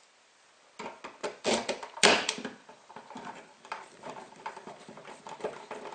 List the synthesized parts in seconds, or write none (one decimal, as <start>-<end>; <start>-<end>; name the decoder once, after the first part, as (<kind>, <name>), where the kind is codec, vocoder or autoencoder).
1.2-4.7 (vocoder, BigVGAN v2)